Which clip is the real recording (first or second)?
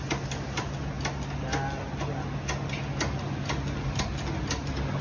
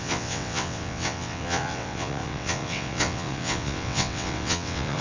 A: first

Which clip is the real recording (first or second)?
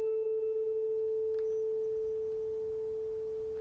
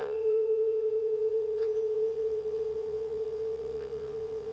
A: first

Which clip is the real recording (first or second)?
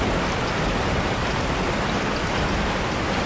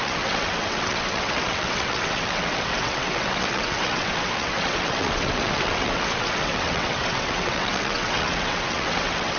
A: first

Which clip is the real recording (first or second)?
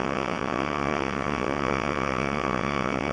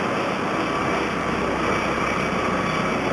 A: second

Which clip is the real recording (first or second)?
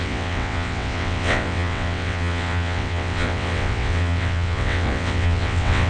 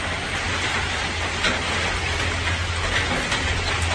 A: second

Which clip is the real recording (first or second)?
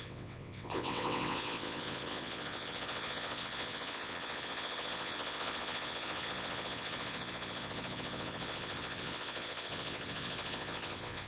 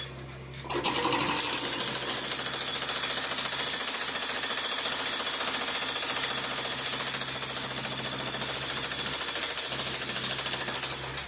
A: second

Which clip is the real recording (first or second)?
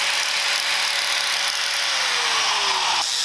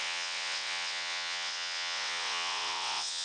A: first